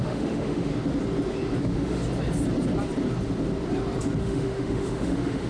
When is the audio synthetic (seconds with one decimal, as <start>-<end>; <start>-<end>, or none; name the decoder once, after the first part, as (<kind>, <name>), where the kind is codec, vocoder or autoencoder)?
0.0-0.7 (autoencoder, DAC-VAE); 1.6-2.0; 4.2-5.5